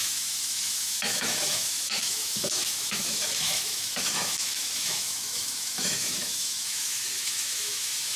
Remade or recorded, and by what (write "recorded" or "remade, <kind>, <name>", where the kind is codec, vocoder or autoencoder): remade, autoencoder, DAC-VAE